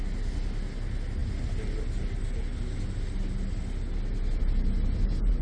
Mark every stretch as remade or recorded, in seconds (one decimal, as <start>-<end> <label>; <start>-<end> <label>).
0.0-5.4 recorded